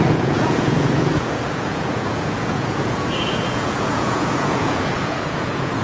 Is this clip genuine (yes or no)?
no